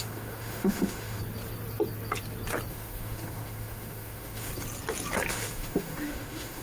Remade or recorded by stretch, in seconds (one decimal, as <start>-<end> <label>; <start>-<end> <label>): 0.0-1.2 remade; 1.2-2.7 recorded; 2.7-4.5 remade; 4.5-5.3 recorded; 5.3-6.6 remade